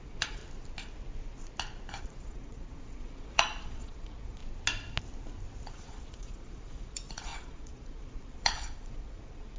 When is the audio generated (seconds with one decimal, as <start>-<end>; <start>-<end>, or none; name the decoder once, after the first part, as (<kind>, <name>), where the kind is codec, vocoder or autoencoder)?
0.0-0.4 (vocoder, Vocos); 2.0-4.4; 5.7-9.6

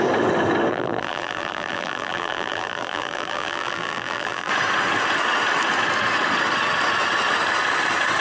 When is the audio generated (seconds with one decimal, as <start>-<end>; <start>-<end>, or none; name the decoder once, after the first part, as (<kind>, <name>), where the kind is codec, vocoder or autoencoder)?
0.7-4.5 (vocoder, BigVGAN v2)